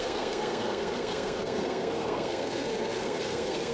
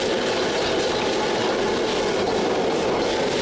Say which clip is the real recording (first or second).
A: second